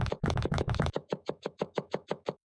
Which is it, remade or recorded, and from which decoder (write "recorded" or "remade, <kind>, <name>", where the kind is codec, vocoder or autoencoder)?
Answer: remade, autoencoder, DAC-VAE